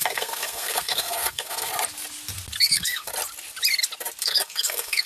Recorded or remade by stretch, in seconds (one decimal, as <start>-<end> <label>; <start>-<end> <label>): 0.0-1.7 remade; 1.7-2.6 recorded; 2.6-3.1 remade; 3.1-4.2 recorded; 4.2-5.1 remade